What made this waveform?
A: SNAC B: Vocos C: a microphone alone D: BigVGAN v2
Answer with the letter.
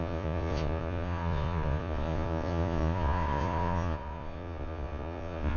B